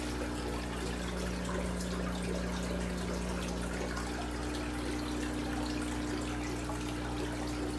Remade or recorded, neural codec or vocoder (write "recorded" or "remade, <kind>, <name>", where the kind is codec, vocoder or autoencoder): recorded